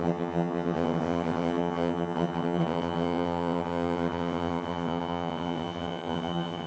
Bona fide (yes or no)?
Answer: no